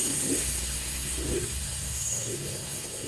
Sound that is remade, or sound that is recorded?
remade